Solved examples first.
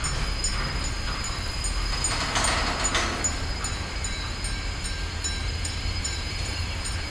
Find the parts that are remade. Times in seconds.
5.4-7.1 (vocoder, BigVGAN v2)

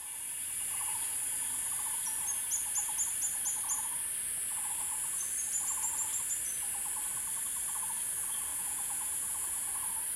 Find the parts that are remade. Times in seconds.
8.5-9.7 (vocoder, Vocos)

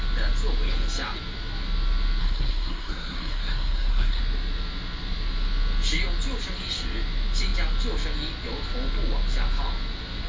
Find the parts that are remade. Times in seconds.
2.2-4.2 (codec, SNAC)

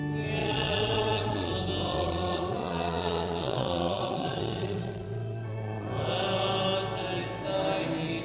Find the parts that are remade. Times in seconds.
0.4-1.5 (vocoder, Vocos); 1.9-5.9

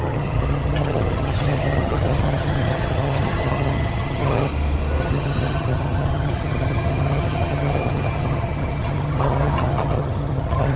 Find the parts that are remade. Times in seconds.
0.0-4.5 (vocoder, HiFi-GAN); 5.0-10.8

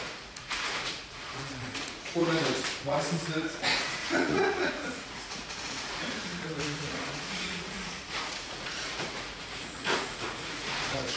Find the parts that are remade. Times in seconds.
0.0-2.2 (vocoder, Vocos); 2.8-11.2

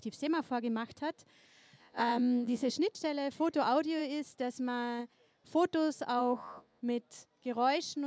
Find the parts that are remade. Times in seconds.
1.8-2.7 (vocoder, Vocos); 6.2-6.8